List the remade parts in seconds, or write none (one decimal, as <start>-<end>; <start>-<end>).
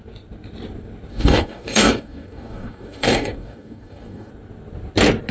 1.1-4.3